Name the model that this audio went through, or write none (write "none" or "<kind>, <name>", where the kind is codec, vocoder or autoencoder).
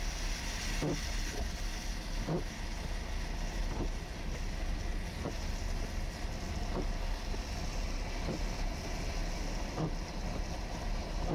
none